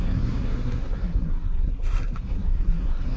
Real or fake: fake